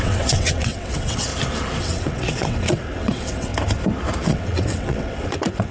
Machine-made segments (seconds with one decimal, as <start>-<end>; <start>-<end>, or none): 0.0-1.3; 1.8-3.5; 4.2-5.7